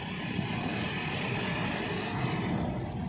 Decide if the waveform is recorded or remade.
recorded